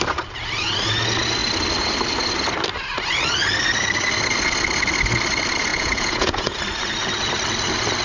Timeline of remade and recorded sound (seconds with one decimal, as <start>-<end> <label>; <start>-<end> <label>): 0.0-5.7 recorded; 5.7-6.6 remade; 6.6-8.0 recorded